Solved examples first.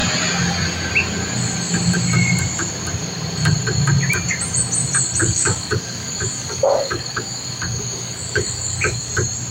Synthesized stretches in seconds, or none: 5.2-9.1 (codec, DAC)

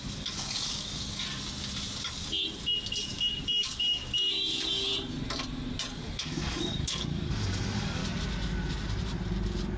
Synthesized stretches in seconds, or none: 0.0-1.2 (codec, DAC); 3.0-4.9; 5.9-8.0